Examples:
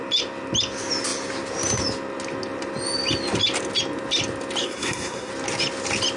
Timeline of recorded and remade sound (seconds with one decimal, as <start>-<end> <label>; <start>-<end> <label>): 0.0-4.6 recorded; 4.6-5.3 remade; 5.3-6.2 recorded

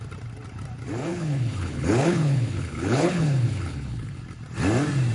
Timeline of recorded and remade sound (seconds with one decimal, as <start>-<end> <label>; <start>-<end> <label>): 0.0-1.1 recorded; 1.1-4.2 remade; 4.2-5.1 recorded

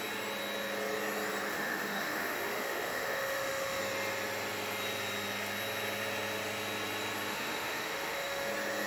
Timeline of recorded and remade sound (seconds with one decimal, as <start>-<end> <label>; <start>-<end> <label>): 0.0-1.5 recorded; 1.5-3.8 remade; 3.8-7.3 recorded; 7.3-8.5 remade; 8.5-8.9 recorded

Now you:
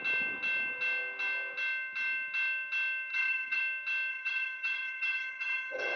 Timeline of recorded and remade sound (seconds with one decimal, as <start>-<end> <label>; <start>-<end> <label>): 0.0-3.1 recorded; 3.1-3.6 remade; 3.6-4.1 recorded; 4.1-6.0 remade

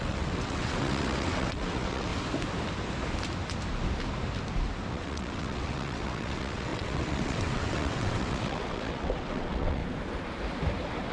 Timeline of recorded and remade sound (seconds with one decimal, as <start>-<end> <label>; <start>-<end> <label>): 0.0-2.1 remade; 2.1-4.9 recorded; 4.9-9.8 remade; 9.8-11.1 recorded

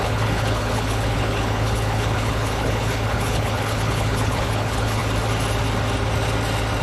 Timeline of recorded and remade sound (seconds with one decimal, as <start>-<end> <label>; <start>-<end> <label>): 0.0-5.0 remade; 5.0-6.8 recorded

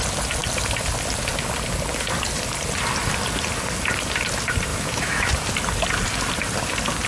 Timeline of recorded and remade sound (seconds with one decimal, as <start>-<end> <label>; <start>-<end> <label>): 0.0-4.7 recorded; 4.7-5.3 remade; 5.3-7.1 recorded